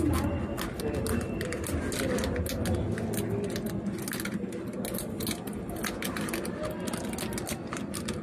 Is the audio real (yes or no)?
yes